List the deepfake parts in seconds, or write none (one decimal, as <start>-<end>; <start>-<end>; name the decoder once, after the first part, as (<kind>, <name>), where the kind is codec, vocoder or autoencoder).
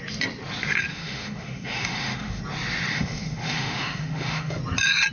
0.9-2.4 (autoencoder, DAC-VAE); 2.9-4.6